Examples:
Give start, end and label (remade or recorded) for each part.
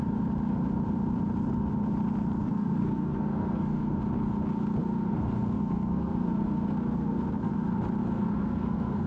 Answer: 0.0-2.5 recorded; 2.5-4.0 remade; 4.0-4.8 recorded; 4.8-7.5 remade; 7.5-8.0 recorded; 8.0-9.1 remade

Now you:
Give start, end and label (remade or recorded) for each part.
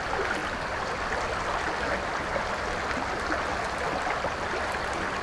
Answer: 0.0-5.2 recorded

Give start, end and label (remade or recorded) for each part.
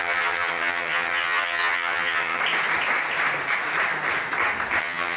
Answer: 0.0-2.4 remade; 2.4-4.8 recorded; 4.8-5.2 remade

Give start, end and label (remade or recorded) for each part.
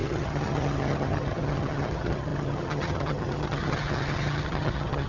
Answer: 0.0-5.1 remade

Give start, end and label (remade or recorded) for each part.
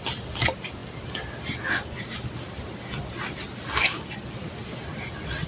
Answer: 0.0-5.5 recorded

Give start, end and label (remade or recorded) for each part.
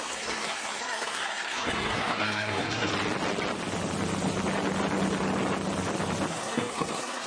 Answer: 0.0-2.9 remade; 2.9-6.3 recorded; 6.3-7.3 remade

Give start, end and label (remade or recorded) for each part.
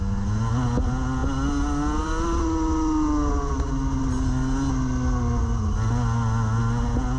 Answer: 0.0-7.2 recorded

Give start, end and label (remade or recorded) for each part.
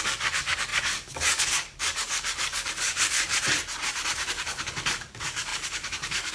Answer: 0.0-3.3 remade; 3.3-4.3 recorded; 4.3-6.3 remade